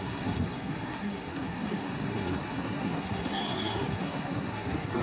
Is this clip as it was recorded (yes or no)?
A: no